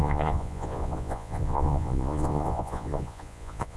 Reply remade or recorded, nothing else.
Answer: remade